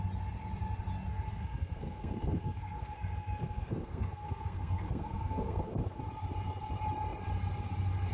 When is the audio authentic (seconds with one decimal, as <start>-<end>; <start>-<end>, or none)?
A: 0.0-1.1; 6.0-8.1